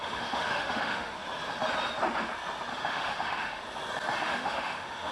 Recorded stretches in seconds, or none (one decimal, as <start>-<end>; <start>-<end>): 1.1-2.7; 3.6-4.2